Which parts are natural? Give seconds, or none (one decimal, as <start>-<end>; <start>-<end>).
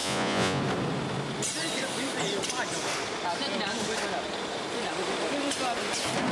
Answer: 0.6-6.3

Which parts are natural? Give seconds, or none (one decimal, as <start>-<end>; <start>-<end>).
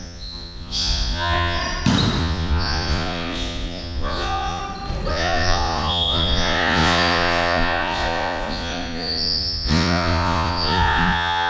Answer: 1.6-2.2; 4.6-5.1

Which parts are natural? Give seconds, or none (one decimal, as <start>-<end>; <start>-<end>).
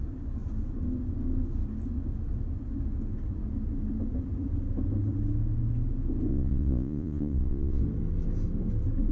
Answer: 0.0-6.3; 7.8-9.1